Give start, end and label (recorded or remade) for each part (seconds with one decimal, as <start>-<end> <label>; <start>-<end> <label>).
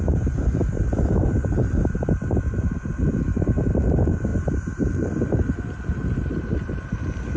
0.0-7.4 remade